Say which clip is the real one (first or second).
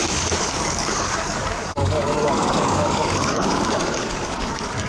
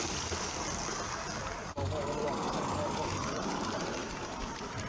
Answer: second